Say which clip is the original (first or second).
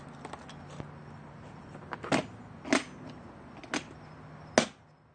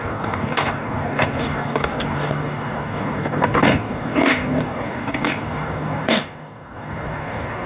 first